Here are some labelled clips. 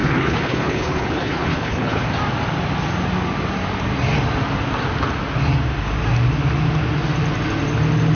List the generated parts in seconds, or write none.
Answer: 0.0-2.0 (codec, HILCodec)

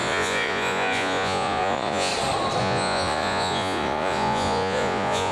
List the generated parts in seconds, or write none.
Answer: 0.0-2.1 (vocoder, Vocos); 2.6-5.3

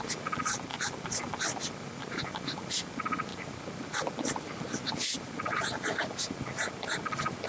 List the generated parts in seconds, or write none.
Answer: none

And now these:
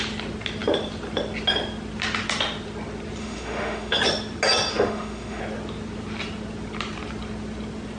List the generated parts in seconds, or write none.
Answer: 3.2-4.0 (autoencoder, DAC-VAE); 4.7-5.4

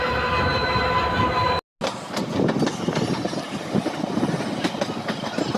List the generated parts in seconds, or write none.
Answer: none